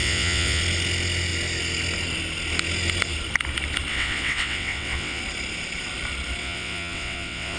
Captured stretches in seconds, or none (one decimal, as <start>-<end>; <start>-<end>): 0.6-3.9; 5.2-6.4